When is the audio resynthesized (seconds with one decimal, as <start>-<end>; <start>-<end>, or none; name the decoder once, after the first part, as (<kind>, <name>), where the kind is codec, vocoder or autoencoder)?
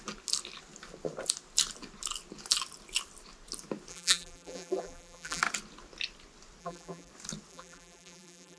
3.9-5.4 (vocoder, BigVGAN v2); 6.6-7.1; 7.5-8.6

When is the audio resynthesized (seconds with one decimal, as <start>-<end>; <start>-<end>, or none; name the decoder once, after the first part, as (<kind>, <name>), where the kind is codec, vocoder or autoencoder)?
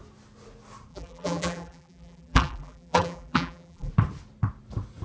0.9-3.9 (vocoder, BigVGAN v2)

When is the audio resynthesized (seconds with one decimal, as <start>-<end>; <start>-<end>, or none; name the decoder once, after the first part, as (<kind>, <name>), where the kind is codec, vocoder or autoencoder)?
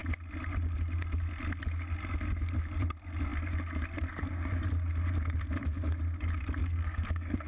6.6-7.5 (codec, SNAC)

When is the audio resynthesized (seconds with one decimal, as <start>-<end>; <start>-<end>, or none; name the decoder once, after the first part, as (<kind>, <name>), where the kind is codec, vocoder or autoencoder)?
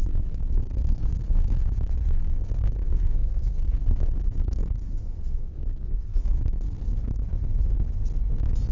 0.0-7.3 (codec, SNAC)